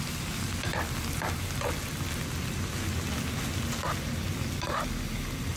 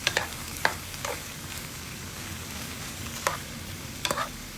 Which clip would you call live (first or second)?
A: first